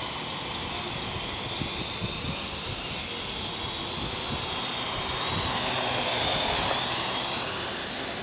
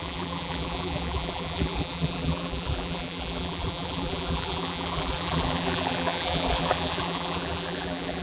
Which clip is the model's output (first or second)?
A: second